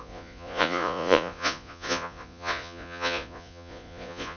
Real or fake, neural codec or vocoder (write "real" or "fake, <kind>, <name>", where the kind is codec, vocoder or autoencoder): fake, vocoder, Vocos